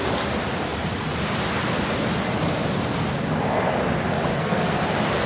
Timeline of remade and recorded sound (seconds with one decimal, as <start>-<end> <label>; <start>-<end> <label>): 0.0-4.3 recorded; 4.3-4.8 remade; 4.8-5.3 recorded